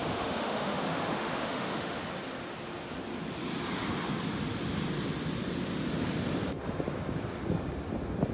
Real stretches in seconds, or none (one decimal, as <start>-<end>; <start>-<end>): 2.0-8.3